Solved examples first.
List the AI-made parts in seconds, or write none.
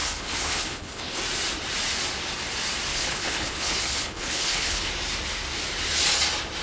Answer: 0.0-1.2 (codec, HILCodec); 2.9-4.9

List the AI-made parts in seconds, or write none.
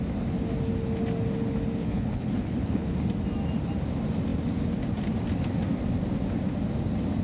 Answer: 1.8-2.9 (codec, HILCodec)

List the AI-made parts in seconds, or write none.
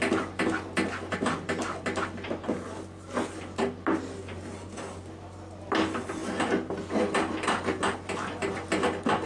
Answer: none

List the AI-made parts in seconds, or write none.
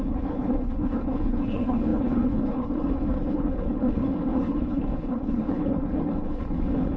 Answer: 0.0-7.0 (codec, HILCodec)